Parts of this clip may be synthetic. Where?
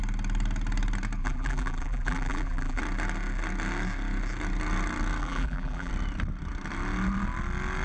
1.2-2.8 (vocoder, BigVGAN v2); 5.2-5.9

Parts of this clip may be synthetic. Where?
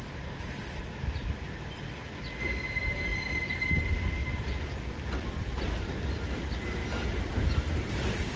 3.1-3.7 (vocoder, BigVGAN v2); 4.2-6.0